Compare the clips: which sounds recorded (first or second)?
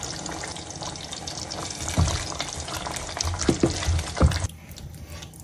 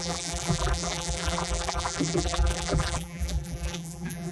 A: first